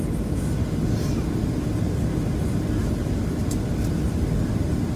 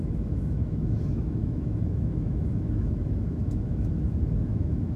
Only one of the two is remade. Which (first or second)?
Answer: second